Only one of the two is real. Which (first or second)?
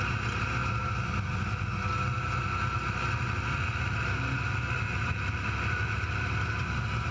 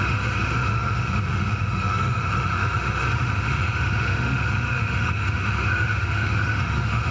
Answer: first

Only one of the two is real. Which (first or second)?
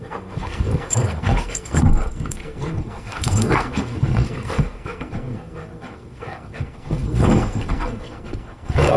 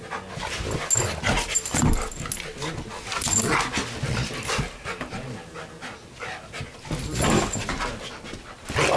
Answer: second